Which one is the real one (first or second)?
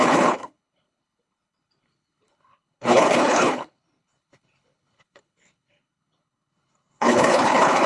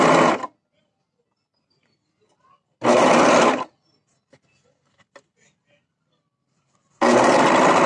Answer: second